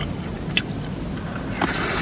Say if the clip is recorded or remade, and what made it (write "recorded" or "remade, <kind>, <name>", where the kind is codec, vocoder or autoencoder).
recorded